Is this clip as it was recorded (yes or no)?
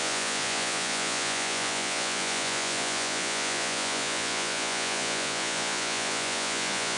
no